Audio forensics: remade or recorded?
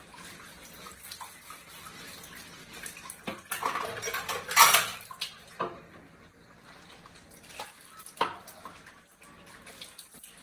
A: recorded